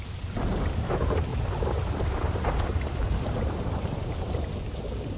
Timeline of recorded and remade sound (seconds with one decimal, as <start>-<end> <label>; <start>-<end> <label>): 0.0-1.3 recorded; 1.3-4.4 remade; 4.4-5.2 recorded